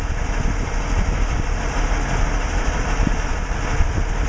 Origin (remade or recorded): recorded